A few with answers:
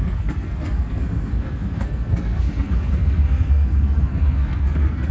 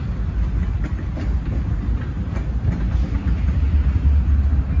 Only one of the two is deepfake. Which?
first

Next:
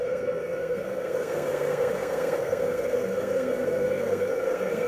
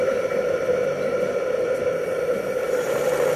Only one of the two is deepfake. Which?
first